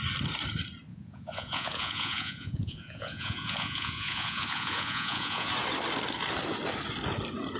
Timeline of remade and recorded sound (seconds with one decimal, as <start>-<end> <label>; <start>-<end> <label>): 0.0-0.9 recorded; 0.9-5.5 remade; 5.5-7.6 recorded

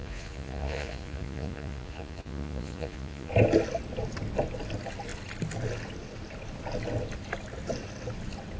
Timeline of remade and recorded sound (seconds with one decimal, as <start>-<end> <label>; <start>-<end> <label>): 0.0-3.3 remade; 3.3-8.6 recorded